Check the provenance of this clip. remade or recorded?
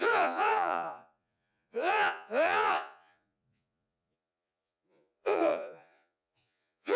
remade